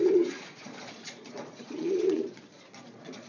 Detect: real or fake fake